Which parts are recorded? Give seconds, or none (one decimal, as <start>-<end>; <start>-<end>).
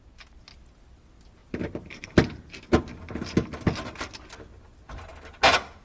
0.0-1.4; 2.8-5.8